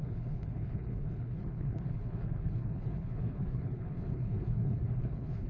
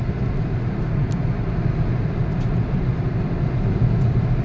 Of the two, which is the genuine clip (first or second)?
second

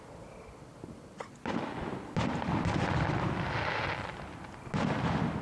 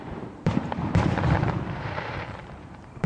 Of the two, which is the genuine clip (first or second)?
first